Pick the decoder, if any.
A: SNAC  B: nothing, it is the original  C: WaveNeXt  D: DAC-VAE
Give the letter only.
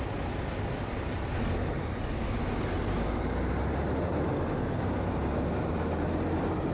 B